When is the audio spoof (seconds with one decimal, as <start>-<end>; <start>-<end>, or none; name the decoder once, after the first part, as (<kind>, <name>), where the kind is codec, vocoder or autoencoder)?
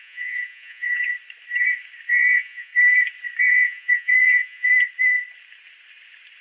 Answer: 0.0-1.1 (vocoder, Vocos); 2.1-2.7; 3.4-4.7